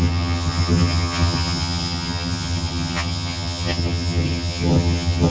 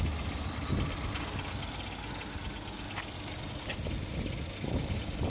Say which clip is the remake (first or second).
first